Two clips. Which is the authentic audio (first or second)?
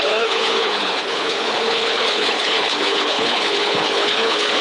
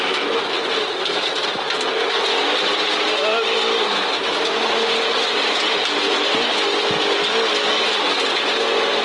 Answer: second